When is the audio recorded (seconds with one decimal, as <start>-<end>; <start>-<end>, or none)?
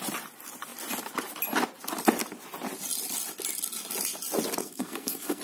0.0-4.6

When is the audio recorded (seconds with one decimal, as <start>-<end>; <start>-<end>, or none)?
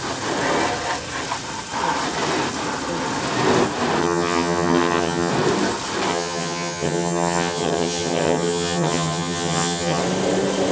0.0-4.0; 5.3-6.1; 10.0-10.7